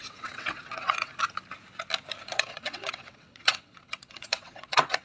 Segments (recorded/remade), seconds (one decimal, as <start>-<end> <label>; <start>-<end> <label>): 0.0-1.1 remade; 1.1-2.2 recorded; 2.2-5.0 remade